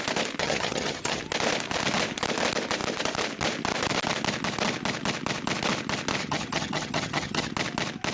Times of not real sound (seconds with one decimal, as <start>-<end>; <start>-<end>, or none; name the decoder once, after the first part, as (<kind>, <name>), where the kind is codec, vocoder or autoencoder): 0.4-1.2 (vocoder, HiFi-GAN); 6.2-7.5